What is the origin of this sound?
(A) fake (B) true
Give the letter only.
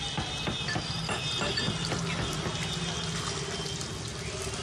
B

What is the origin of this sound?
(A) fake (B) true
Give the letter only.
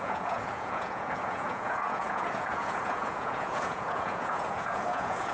A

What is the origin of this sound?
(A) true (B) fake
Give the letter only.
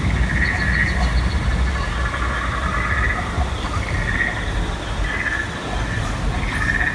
A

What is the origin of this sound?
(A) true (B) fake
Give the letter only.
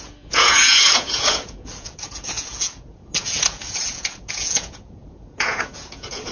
B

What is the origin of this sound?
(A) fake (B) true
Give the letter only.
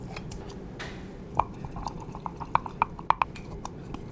B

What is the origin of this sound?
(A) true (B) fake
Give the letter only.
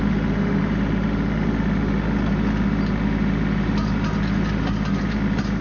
A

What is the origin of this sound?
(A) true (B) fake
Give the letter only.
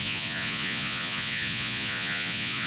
B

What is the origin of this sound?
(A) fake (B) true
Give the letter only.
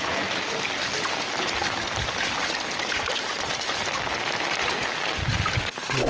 B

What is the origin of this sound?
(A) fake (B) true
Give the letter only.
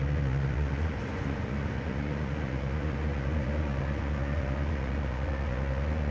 A